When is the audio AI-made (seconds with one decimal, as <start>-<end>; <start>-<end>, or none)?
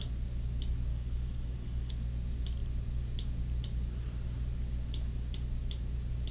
0.9-1.9